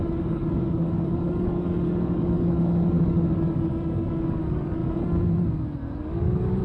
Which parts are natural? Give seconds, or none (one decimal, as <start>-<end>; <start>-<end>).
4.8-6.0